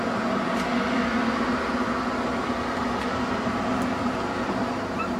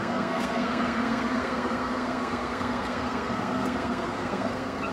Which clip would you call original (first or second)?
first